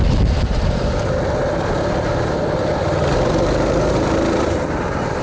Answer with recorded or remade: recorded